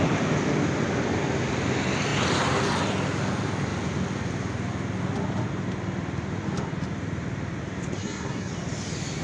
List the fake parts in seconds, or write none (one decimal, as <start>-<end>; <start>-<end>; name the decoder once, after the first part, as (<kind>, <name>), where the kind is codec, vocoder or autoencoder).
8.0-8.5 (codec, SNAC)